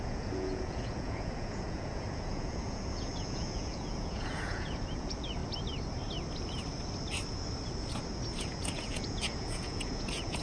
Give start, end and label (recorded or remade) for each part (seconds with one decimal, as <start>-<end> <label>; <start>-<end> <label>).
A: 0.0-5.4 remade; 5.4-8.4 recorded; 8.4-10.4 remade